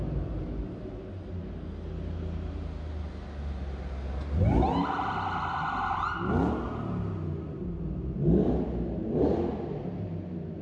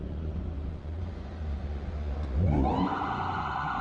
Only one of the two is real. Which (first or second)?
first